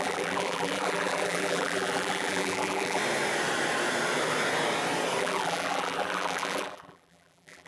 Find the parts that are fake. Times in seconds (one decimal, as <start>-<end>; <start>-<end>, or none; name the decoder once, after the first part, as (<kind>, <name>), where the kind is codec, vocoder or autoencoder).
0.0-3.0 (vocoder, BigVGAN v2); 5.2-7.7